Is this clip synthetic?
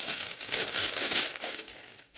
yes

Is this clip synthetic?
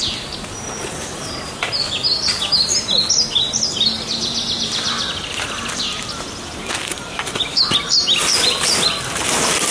no